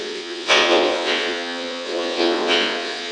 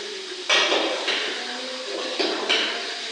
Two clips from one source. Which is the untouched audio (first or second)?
second